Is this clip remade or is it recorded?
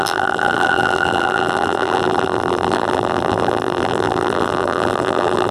remade